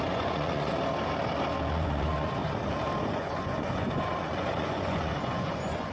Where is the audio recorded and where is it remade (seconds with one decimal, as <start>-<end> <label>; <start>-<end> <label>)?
0.0-0.7 remade; 0.7-1.7 recorded; 1.7-2.4 remade; 2.4-3.1 recorded; 3.1-5.9 remade